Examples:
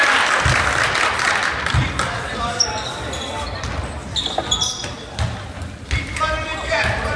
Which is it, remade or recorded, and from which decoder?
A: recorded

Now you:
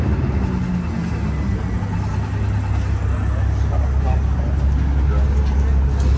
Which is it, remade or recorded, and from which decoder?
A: recorded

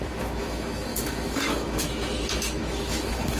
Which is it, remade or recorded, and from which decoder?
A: remade, autoencoder, DAC-VAE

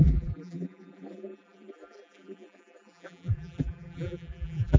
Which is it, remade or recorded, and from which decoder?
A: remade, vocoder, BigVGAN v2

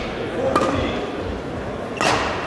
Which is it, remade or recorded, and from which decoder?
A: recorded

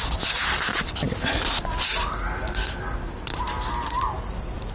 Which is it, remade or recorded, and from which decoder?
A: remade, vocoder, BigVGAN v2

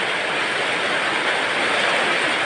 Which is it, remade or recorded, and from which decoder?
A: recorded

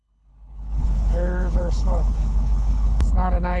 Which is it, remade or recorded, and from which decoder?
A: remade, codec, HILCodec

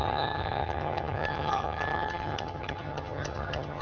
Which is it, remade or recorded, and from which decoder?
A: remade, vocoder, HiFi-GAN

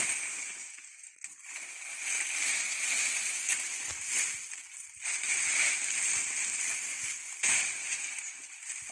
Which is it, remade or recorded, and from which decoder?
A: recorded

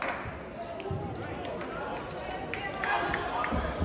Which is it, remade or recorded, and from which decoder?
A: recorded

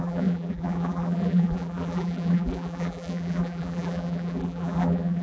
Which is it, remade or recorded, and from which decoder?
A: remade, vocoder, BigVGAN v2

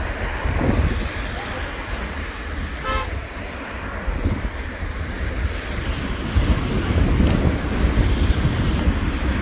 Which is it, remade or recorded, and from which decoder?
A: recorded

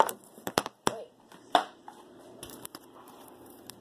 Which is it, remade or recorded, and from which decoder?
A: remade, vocoder, BigVGAN v2